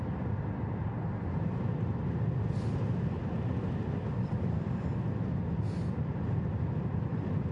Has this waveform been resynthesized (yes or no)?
no